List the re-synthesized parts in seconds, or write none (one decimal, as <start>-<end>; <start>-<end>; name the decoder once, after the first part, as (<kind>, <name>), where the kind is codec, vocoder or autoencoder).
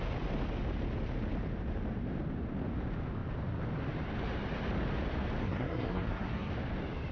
5.4-6.5 (codec, SNAC)